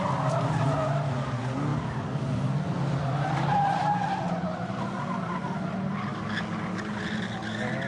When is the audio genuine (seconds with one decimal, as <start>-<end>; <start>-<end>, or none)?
0.0-7.9